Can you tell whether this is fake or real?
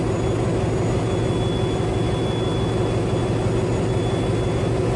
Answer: real